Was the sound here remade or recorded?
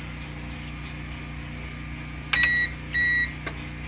recorded